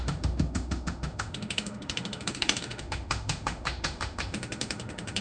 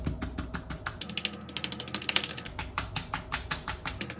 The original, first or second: second